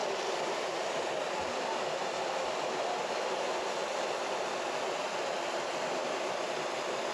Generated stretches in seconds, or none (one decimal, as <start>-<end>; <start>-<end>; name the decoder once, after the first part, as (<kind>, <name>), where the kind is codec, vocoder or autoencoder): none